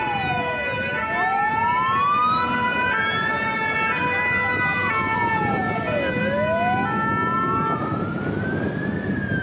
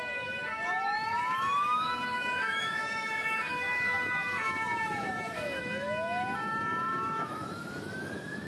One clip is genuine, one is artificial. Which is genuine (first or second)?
first